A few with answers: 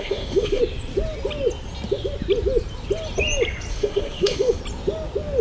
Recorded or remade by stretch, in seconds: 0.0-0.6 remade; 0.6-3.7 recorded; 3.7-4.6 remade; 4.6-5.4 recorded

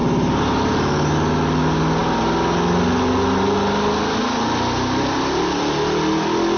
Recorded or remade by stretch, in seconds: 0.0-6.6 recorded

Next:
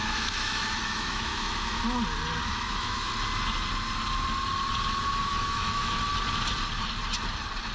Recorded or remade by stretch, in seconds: 0.0-1.8 remade; 1.8-2.5 recorded; 2.5-3.1 remade; 3.1-5.3 recorded; 5.3-6.1 remade; 6.1-7.7 recorded

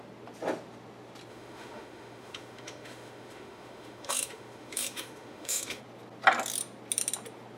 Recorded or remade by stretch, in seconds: 0.0-1.3 recorded; 1.3-5.8 remade; 5.8-7.6 recorded

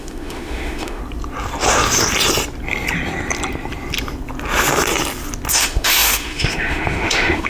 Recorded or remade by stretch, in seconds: 0.0-1.0 remade; 1.0-5.5 recorded; 5.5-7.5 remade

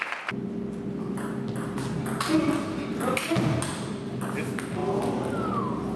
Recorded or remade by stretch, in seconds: 0.0-6.0 recorded

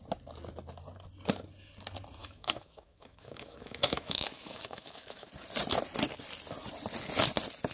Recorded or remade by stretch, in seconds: 0.0-2.2 recorded; 2.2-5.3 remade; 5.3-7.7 recorded

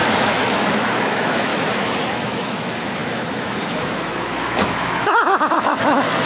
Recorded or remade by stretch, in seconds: 0.0-1.5 remade; 1.5-2.1 recorded; 2.1-6.2 remade